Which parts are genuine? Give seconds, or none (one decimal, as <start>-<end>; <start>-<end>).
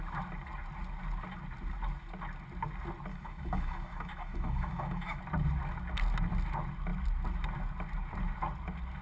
0.0-3.1; 5.2-9.0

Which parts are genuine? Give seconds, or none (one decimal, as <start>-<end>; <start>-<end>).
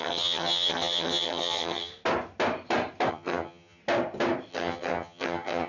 1.9-3.1; 3.8-4.5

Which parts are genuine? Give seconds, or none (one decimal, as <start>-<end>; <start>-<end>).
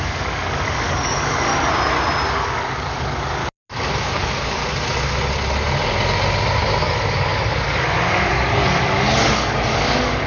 1.5-2.3; 3.4-3.9; 4.6-6.8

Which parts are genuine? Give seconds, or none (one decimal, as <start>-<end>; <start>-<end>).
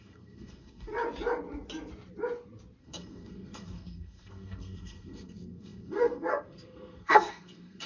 0.9-2.8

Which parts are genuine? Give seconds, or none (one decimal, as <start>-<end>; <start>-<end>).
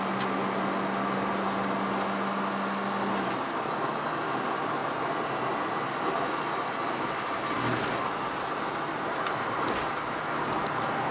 0.0-11.1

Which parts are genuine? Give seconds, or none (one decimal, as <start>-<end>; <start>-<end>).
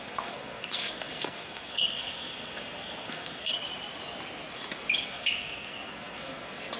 3.5-5.0